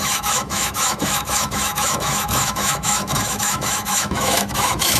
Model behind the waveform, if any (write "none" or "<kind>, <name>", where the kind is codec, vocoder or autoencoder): autoencoder, DAC-VAE